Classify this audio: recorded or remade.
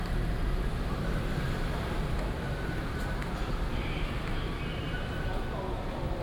remade